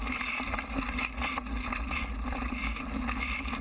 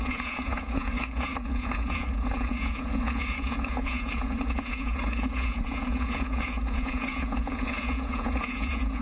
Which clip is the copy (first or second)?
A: second